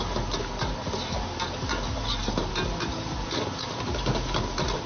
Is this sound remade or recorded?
recorded